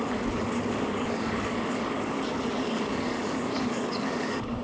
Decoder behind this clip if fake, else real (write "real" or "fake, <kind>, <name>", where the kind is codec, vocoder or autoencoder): fake, codec, DAC